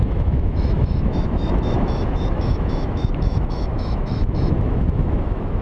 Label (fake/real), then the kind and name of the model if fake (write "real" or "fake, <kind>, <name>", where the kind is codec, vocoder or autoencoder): fake, autoencoder, DAC-VAE